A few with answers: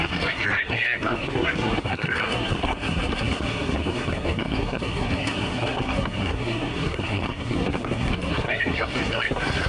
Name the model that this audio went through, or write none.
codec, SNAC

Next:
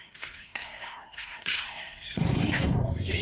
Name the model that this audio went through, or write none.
codec, SNAC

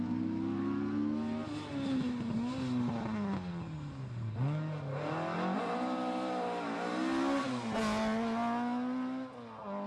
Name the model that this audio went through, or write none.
none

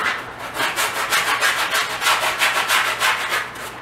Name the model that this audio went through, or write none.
none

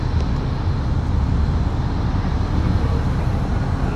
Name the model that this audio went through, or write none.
none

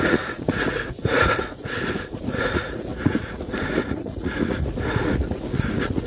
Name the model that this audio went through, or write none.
vocoder, Vocos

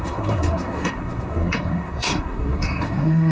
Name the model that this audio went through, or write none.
codec, SNAC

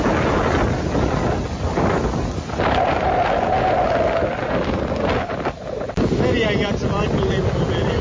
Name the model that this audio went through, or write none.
none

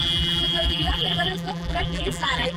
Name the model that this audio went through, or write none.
vocoder, BigVGAN v2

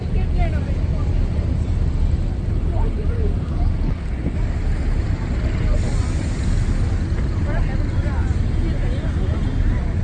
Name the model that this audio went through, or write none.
none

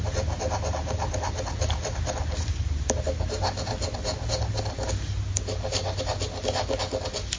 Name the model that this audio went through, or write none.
none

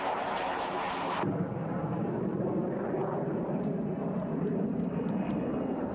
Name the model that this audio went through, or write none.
vocoder, BigVGAN v2